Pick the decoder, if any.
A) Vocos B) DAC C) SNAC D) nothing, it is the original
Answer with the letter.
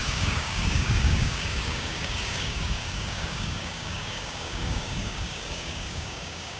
B